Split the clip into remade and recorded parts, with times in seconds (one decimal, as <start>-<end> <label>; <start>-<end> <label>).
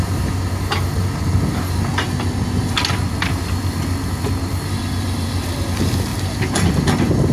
0.0-6.1 recorded; 6.1-6.7 remade; 6.7-7.3 recorded